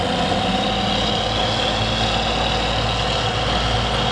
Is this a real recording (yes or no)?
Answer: yes